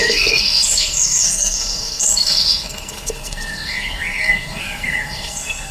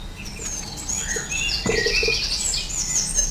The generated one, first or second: first